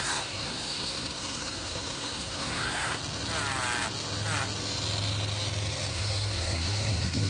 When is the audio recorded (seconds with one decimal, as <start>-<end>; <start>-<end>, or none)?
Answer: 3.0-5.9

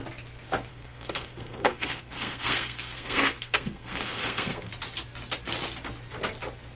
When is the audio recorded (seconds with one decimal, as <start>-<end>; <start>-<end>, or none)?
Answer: 0.0-0.7; 4.7-6.7

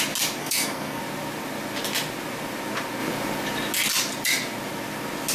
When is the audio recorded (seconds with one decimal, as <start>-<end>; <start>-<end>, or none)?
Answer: 0.0-0.4; 1.0-5.3

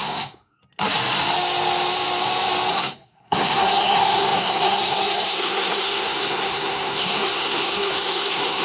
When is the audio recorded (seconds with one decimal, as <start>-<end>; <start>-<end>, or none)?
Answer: 0.6-2.7